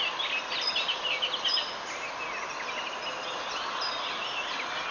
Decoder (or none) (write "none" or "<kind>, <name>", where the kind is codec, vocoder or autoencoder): none